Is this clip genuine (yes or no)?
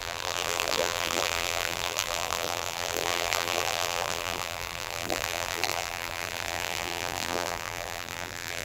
no